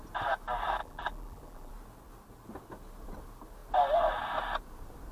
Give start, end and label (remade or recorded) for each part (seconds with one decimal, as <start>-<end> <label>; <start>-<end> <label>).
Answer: 0.0-0.8 recorded; 0.8-1.7 remade; 1.7-5.1 recorded